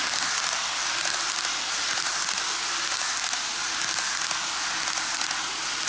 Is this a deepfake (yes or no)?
no